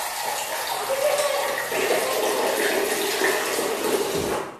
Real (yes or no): yes